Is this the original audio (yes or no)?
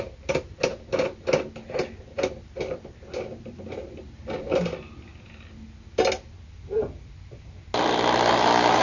yes